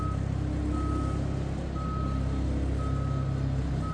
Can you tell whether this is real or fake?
real